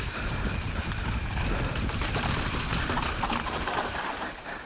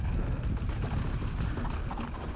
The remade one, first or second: first